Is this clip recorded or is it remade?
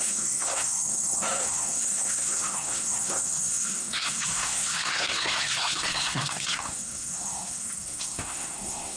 remade